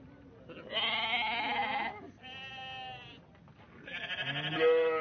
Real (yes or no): yes